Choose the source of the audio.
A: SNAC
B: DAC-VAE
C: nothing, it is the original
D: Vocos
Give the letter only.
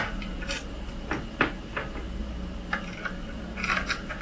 C